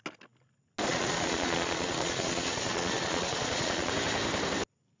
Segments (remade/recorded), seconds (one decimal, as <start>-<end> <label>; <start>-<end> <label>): 0.0-0.9 recorded; 0.9-3.9 remade; 3.9-5.0 recorded